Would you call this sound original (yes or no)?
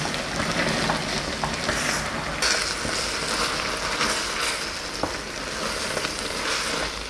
yes